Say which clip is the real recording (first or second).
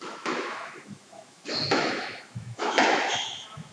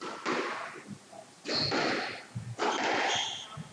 second